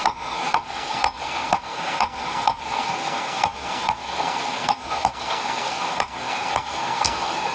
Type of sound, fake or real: fake